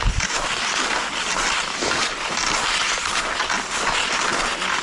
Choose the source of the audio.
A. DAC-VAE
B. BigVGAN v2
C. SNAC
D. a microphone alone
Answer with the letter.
D